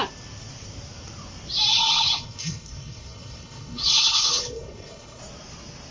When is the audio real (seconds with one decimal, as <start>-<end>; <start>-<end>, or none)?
0.0-1.7; 5.2-5.9